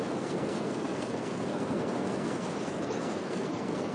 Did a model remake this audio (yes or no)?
yes